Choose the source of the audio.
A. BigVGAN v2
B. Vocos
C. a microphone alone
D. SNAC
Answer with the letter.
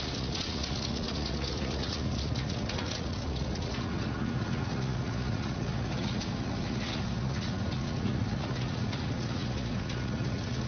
B